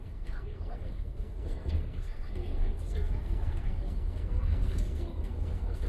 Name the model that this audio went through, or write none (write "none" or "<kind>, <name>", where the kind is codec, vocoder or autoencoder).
codec, SNAC